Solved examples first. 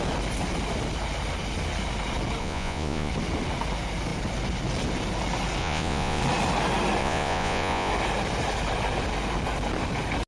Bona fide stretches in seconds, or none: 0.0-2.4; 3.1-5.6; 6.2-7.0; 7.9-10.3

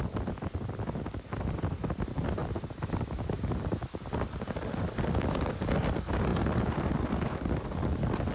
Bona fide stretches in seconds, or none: 0.0-8.3

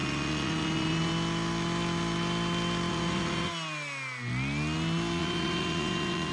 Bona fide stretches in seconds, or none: 1.1-2.9; 3.5-5.2

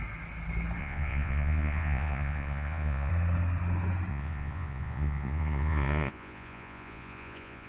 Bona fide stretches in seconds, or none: 0.0-0.8; 3.1-4.1

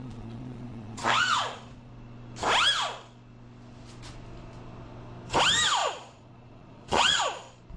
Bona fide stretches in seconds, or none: 1.9-5.8; 7.2-7.8